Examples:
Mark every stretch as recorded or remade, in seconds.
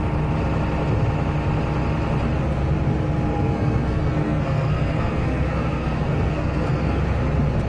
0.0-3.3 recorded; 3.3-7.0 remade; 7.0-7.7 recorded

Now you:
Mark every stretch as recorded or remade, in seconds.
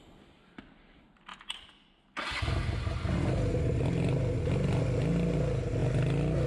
0.0-6.5 recorded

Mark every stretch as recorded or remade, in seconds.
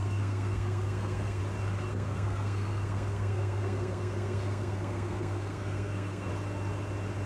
0.0-1.4 remade; 1.4-1.9 recorded; 1.9-6.3 remade; 6.3-7.3 recorded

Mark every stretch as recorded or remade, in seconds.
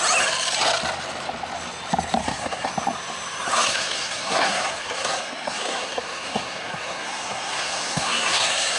0.0-2.2 recorded; 2.2-2.7 remade; 2.7-3.5 recorded; 3.5-8.8 remade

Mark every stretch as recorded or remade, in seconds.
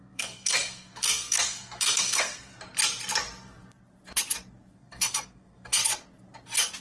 0.0-2.5 remade; 2.5-4.7 recorded; 4.7-5.8 remade; 5.8-6.8 recorded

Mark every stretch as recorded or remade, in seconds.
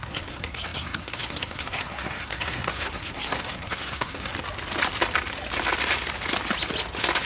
0.0-4.3 remade; 4.3-7.3 recorded